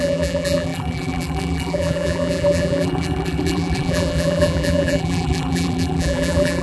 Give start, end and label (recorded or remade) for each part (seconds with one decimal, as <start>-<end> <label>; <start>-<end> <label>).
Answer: 0.0-6.6 remade